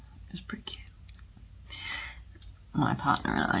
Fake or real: real